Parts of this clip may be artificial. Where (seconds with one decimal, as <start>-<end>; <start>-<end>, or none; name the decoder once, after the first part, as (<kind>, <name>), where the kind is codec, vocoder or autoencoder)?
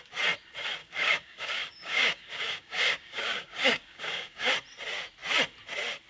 0.8-4.5 (codec, DAC)